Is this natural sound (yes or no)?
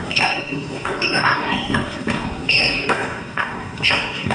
no